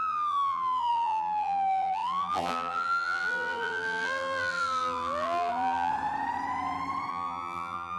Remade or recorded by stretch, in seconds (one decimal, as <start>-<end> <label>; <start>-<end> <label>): 0.0-5.9 remade; 5.9-7.1 recorded; 7.1-8.0 remade